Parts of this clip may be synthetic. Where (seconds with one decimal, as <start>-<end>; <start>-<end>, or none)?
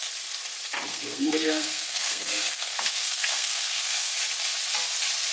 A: 0.9-4.1